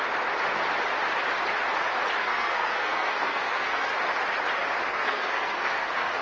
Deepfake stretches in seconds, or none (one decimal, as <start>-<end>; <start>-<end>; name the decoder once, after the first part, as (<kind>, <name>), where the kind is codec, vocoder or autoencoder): 2.2-3.9 (codec, SNAC); 4.9-6.2